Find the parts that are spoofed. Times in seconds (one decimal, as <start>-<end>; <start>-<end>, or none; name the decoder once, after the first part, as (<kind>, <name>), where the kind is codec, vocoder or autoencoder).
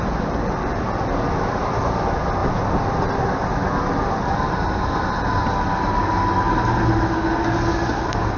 none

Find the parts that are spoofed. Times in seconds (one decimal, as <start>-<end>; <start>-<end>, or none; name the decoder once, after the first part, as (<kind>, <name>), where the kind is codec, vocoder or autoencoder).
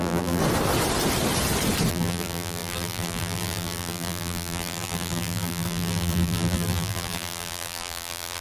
0.0-0.4 (vocoder, BigVGAN v2); 1.9-8.4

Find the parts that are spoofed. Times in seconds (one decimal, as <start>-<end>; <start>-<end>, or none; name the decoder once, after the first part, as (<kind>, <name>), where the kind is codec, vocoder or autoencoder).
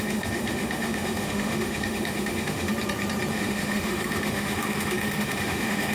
0.0-2.7 (autoencoder, DAC-VAE); 3.3-5.9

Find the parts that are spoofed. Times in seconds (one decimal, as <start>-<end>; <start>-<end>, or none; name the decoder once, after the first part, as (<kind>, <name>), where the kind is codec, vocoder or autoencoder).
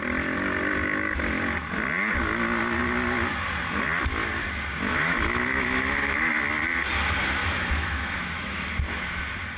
4.9-6.4 (autoencoder, DAC-VAE); 7.4-8.6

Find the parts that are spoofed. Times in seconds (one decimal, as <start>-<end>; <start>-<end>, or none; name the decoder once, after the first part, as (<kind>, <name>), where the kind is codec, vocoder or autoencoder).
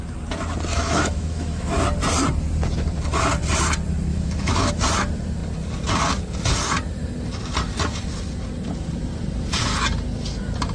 0.7-1.7 (autoencoder, DAC-VAE); 4.1-4.7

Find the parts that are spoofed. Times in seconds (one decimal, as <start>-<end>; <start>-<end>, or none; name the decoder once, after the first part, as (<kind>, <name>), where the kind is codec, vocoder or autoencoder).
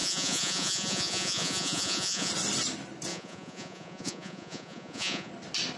0.0-2.3 (vocoder, Vocos); 3.1-5.3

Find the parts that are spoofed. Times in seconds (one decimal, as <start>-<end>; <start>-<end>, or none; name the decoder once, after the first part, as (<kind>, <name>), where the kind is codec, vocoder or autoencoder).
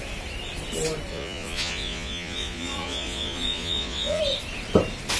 1.1-4.2 (vocoder, Vocos)